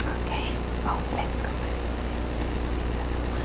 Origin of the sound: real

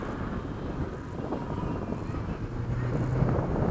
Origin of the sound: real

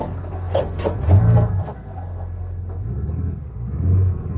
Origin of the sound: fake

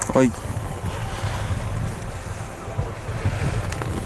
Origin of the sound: real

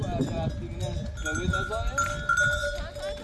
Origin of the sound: real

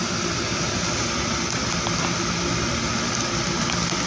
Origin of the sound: real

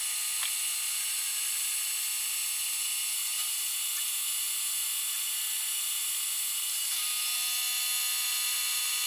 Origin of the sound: real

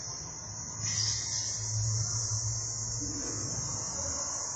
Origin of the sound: real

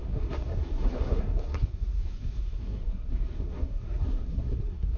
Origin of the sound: fake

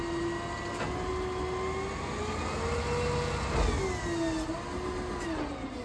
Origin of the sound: real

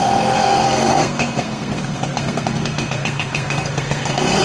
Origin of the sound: fake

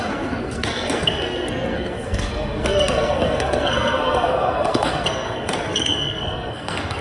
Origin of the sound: fake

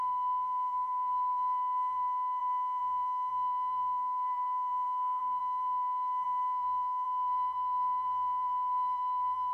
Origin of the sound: fake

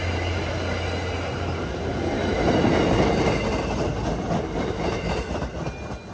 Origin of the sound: real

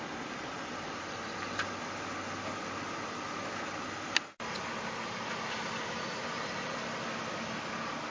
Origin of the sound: real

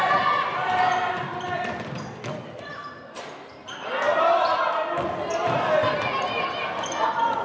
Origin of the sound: real